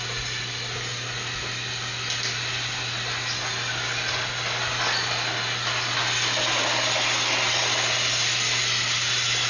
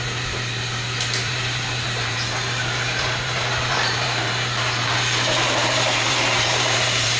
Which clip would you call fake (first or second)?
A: second